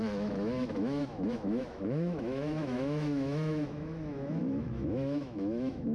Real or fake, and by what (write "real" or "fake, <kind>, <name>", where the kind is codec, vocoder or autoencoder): fake, autoencoder, DAC-VAE